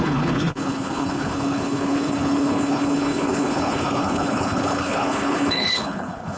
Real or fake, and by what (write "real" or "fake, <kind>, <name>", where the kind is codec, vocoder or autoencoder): fake, codec, HILCodec